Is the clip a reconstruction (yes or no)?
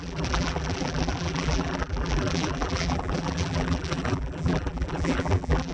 yes